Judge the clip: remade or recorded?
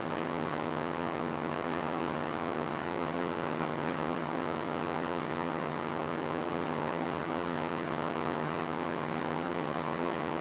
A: remade